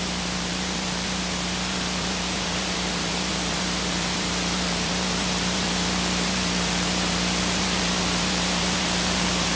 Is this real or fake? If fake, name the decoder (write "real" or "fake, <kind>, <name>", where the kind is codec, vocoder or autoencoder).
fake, vocoder, BigVGAN v2